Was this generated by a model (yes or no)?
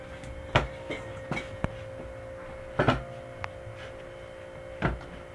no